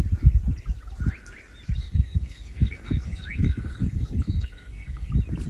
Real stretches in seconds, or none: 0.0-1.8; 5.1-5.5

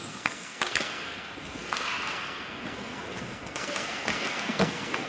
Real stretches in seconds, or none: none

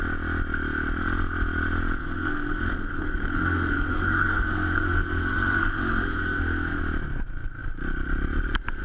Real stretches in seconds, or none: 0.0-2.0; 6.8-8.8

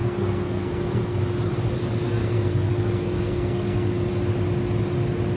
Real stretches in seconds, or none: 1.2-2.2; 4.1-5.4

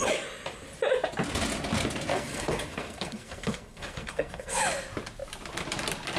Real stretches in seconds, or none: 0.0-2.1; 4.6-6.2

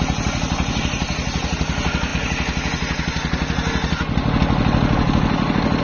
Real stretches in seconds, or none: 0.0-5.8